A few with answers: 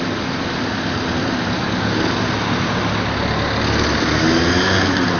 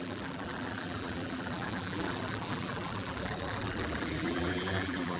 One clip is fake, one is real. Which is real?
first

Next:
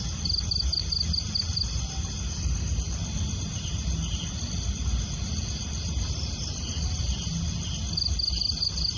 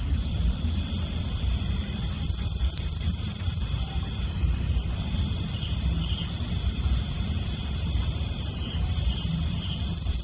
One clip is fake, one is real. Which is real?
first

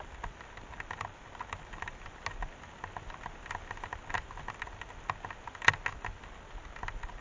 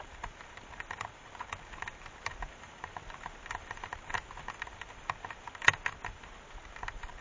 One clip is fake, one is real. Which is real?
first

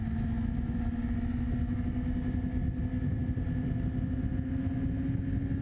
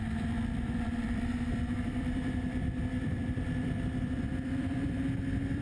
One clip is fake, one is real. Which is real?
first